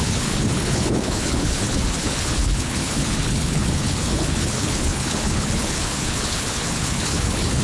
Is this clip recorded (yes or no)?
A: no